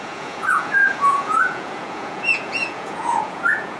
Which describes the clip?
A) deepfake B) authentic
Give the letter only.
A